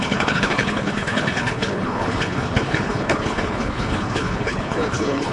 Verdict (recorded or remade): remade